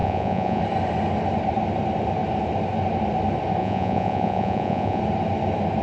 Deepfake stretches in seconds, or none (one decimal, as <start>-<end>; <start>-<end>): 0.0-0.6; 3.6-5.0